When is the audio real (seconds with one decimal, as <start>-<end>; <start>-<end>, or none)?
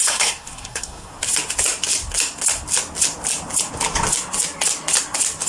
1.1-5.5